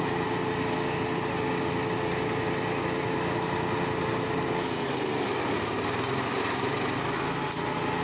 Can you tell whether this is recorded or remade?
recorded